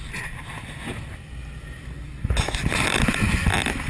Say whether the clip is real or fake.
real